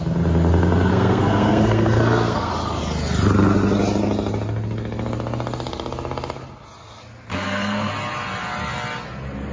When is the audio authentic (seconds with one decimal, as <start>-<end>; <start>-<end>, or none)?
0.0-0.9; 2.5-7.3; 7.9-9.5